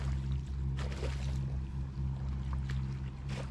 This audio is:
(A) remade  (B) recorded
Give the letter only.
B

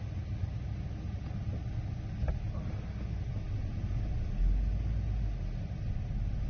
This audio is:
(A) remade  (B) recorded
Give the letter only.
B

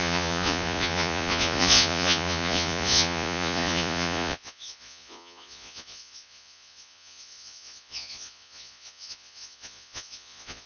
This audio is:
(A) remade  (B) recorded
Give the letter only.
A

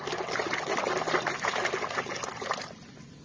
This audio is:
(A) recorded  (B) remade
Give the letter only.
A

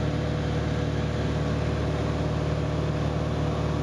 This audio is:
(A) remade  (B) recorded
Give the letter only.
B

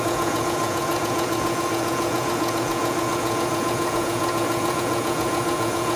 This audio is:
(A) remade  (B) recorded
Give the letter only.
A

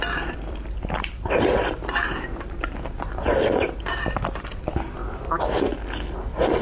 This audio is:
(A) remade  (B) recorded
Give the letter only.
A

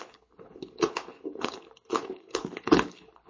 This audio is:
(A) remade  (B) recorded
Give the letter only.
A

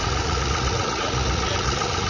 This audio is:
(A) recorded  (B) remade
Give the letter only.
B